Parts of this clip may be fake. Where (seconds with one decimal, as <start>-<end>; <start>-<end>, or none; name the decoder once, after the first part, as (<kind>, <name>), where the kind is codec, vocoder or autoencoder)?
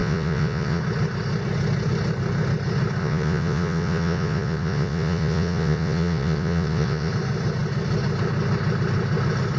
0.0-0.8 (vocoder, Vocos); 3.0-7.1